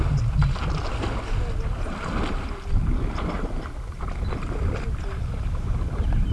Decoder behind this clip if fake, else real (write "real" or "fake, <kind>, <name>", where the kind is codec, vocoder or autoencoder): real